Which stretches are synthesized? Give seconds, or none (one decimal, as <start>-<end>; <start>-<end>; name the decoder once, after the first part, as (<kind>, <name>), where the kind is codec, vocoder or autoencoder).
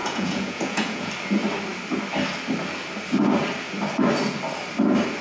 0.0-1.1 (vocoder, Vocos)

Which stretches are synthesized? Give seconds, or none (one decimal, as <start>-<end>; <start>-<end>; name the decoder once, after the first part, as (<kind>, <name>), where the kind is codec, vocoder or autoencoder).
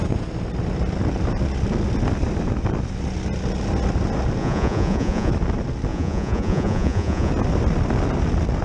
4.4-5.3 (vocoder, Vocos); 5.9-7.3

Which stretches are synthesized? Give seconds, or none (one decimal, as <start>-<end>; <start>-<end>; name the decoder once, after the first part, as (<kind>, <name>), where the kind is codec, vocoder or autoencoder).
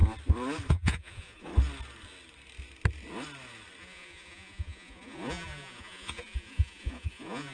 0.7-1.5 (vocoder, Vocos); 3.8-7.5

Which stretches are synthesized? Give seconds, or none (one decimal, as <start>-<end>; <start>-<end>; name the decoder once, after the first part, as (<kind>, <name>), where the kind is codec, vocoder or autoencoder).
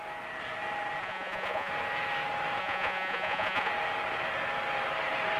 1.0-1.7 (vocoder, Vocos); 2.6-3.7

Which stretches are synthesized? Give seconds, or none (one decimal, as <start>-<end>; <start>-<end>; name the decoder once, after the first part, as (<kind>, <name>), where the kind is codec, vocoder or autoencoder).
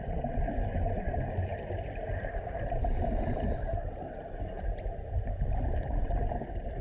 none